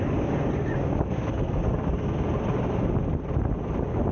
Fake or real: real